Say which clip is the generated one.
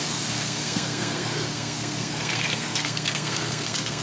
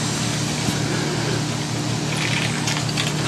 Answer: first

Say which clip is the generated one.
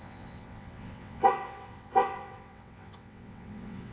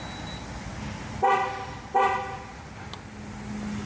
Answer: first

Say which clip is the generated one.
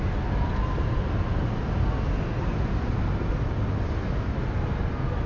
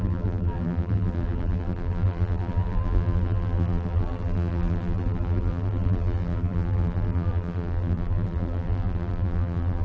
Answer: second